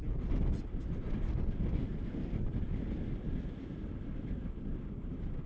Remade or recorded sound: recorded